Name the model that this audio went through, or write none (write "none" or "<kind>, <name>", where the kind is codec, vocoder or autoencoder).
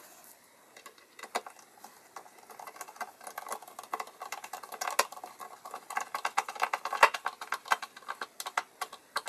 none